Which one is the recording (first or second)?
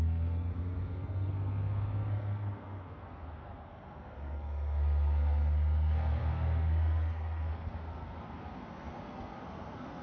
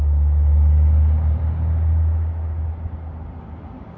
second